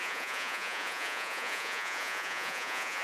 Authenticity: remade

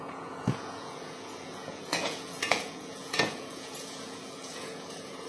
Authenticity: remade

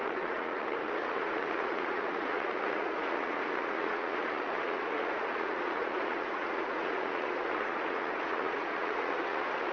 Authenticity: remade